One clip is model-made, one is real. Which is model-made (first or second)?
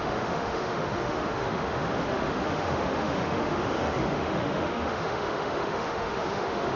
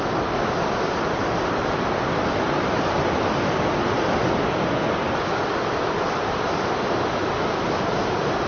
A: first